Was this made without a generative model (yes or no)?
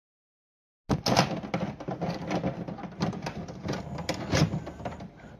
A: yes